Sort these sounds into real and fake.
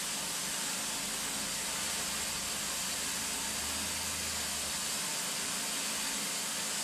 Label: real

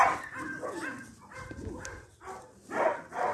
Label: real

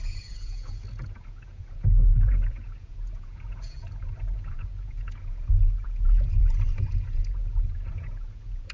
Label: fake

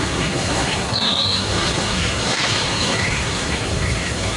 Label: fake